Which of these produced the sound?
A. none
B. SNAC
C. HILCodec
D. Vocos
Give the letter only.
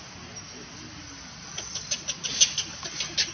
A